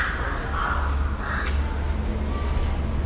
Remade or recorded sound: recorded